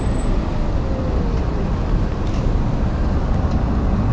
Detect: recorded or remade recorded